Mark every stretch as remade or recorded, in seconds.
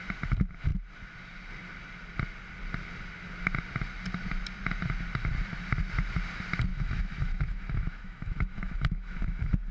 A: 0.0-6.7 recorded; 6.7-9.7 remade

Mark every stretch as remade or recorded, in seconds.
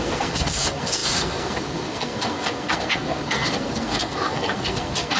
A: 0.0-5.2 remade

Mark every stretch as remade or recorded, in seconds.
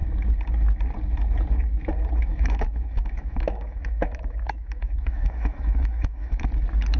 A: 0.0-2.3 recorded; 2.3-6.5 remade; 6.5-7.0 recorded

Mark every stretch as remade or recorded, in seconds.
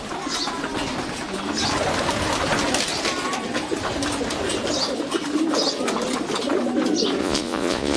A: 0.0-7.2 recorded; 7.2-8.0 remade